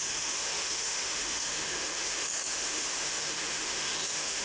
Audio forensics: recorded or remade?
remade